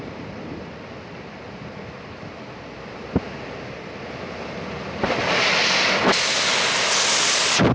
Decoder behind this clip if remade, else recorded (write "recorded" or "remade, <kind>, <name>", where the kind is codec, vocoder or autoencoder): recorded